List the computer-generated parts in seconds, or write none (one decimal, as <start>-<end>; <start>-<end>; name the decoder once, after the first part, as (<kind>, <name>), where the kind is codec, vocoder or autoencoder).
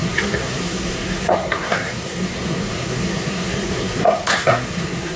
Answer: 0.0-5.2 (codec, SNAC)